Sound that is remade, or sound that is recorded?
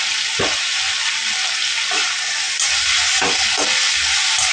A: recorded